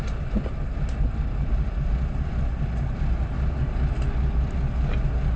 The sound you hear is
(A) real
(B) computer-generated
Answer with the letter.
A